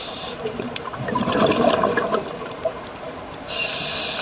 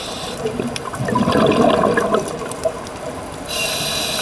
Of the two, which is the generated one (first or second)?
first